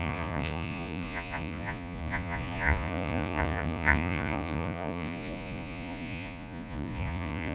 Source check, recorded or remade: remade